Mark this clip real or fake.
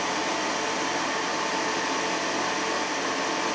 real